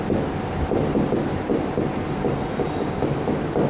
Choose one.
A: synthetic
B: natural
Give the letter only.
A